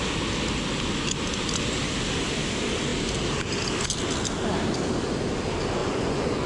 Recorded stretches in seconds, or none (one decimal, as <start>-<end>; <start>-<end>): 0.0-5.8